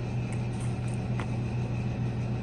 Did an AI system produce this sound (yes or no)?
no